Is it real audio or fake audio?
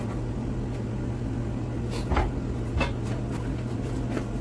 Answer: real